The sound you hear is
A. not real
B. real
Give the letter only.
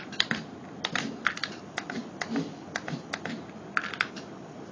B